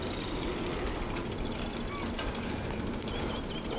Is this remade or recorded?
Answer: recorded